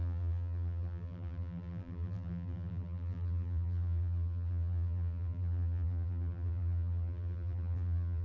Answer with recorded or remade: remade